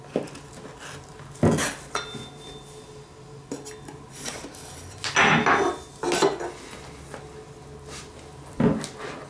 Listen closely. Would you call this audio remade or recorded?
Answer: recorded